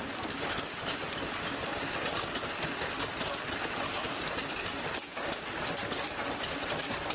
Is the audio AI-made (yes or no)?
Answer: no